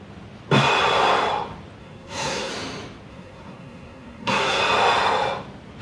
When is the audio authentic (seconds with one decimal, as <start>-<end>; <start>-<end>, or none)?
0.0-1.8; 2.5-3.1; 4.6-5.8